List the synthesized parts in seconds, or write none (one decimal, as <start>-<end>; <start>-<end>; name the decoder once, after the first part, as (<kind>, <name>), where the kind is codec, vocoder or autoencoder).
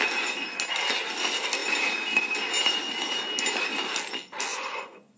4.5-5.2 (vocoder, Vocos)